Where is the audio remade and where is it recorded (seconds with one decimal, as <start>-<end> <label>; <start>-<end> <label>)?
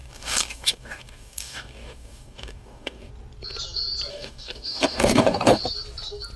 0.0-3.1 remade; 3.1-4.1 recorded; 4.1-5.6 remade; 5.6-6.4 recorded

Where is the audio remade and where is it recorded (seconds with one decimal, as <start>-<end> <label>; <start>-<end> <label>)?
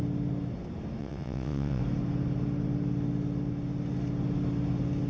0.0-1.0 recorded; 1.0-1.8 remade; 1.8-5.1 recorded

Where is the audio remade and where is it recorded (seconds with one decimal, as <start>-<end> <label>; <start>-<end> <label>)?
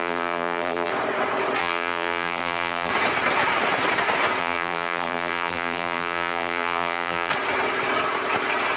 0.0-0.9 remade; 0.9-1.6 recorded; 1.6-2.9 remade; 2.9-4.4 recorded; 4.4-7.3 remade; 7.3-8.8 recorded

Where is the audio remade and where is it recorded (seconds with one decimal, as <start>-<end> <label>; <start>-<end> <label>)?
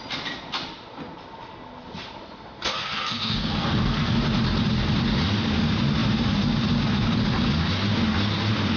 0.0-2.8 recorded; 2.8-4.2 remade; 4.2-8.8 recorded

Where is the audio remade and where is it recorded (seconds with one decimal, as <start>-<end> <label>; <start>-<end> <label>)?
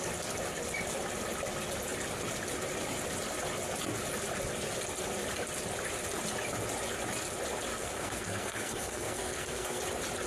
0.0-7.7 recorded; 7.7-9.8 remade; 9.8-10.3 recorded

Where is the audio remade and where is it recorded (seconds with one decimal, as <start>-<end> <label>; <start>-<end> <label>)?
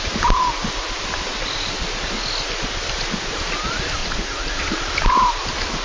0.0-4.0 recorded; 4.0-4.6 remade; 4.6-5.8 recorded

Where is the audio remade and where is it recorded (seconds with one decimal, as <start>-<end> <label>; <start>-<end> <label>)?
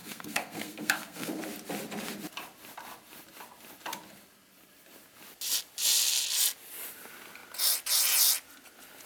0.0-1.4 remade; 1.4-9.1 recorded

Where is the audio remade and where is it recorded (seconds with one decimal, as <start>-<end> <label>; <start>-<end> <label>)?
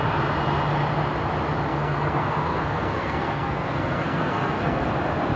0.0-1.7 recorded; 1.7-4.9 remade; 4.9-5.4 recorded